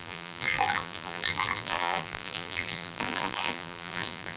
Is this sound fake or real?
fake